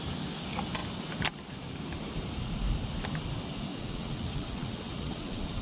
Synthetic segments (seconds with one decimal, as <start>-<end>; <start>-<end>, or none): 3.7-5.6